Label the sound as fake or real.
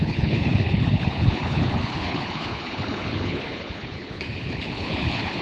fake